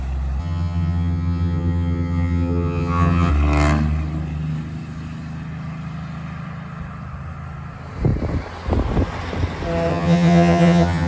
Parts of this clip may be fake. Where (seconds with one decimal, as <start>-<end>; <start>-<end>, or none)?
0.4-3.3; 9.9-11.1